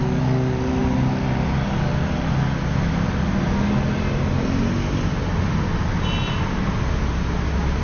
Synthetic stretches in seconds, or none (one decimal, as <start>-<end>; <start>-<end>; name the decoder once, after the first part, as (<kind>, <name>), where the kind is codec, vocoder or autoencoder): none